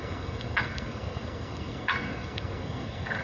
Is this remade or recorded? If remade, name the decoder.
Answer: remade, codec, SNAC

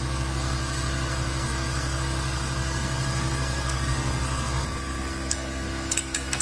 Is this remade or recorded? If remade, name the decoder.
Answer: remade, codec, SNAC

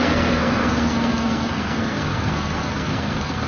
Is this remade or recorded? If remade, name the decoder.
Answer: remade, codec, SNAC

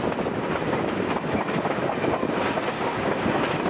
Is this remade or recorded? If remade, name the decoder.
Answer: recorded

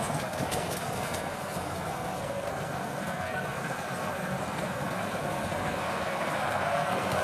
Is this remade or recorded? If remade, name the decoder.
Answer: remade, codec, SNAC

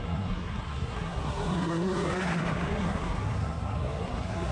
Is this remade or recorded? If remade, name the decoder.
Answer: remade, codec, SNAC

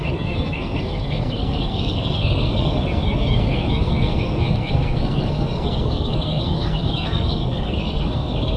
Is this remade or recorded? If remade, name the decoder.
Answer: remade, codec, SNAC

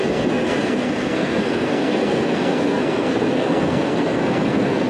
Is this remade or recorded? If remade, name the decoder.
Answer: remade, codec, SNAC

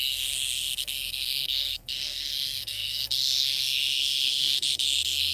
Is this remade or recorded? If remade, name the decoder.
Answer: remade, codec, SNAC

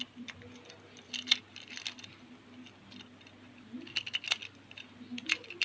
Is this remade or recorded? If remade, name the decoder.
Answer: recorded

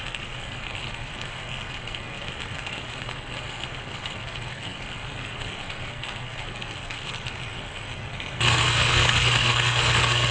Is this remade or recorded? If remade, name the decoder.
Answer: remade, codec, SNAC